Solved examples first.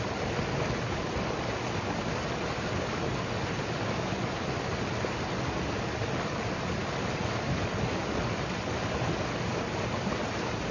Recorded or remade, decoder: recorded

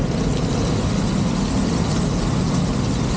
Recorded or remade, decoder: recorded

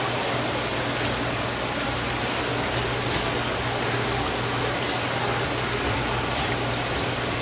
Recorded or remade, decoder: recorded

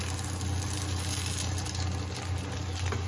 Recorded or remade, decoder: recorded